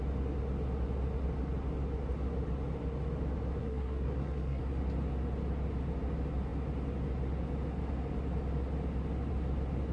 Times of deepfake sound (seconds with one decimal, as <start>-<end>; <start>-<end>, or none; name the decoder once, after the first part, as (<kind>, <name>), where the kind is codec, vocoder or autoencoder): 3.6-4.6 (codec, SNAC)